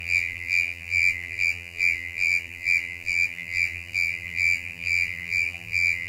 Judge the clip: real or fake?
fake